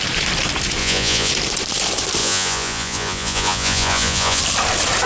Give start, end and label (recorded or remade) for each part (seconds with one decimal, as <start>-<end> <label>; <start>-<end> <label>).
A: 0.0-0.8 recorded; 0.8-1.3 remade; 1.3-2.2 recorded; 2.2-4.4 remade; 4.4-5.1 recorded